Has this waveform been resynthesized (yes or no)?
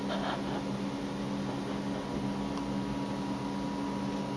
no